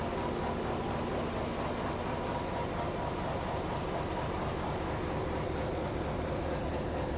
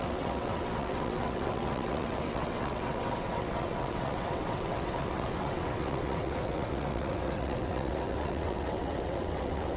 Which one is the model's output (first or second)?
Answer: second